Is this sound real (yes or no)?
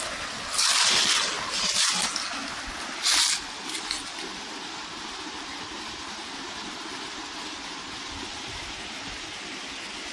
yes